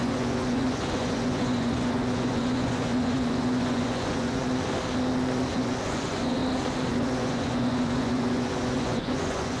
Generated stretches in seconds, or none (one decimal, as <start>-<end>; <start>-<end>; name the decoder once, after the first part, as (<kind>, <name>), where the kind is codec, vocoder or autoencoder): 0.0-4.4 (vocoder, Vocos); 5.5-6.4; 6.9-9.6